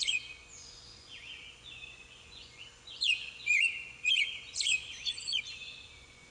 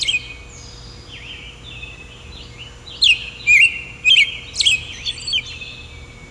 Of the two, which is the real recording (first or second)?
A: second